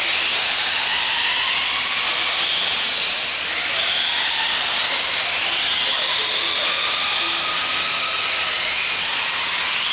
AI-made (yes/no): no